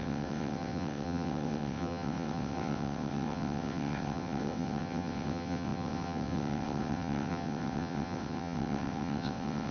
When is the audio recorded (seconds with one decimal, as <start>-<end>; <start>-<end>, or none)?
none

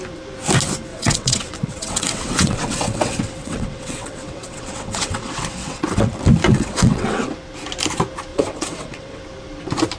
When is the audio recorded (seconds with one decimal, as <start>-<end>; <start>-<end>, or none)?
0.0-0.9; 6.1-6.5; 7.2-8.3; 9.2-10.0

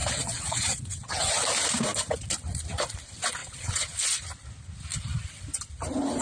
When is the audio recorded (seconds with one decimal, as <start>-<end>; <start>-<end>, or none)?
1.3-3.4; 4.0-6.2

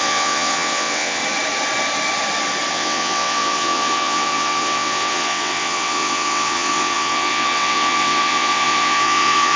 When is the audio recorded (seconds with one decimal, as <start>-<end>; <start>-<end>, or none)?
1.2-2.7

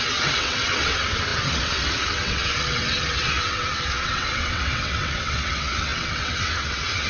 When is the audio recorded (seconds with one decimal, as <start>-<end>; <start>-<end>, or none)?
none

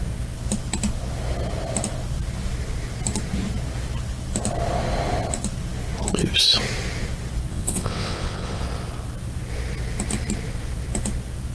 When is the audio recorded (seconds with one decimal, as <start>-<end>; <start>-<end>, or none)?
0.0-7.5; 8.6-11.5

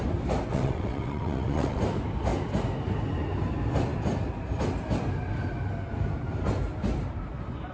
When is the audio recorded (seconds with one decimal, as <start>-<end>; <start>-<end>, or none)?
0.0-0.5; 1.8-7.7